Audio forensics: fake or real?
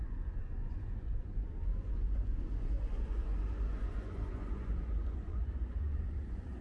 fake